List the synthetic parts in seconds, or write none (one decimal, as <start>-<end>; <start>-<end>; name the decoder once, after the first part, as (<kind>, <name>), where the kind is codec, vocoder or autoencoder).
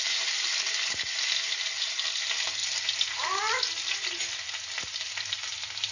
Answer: none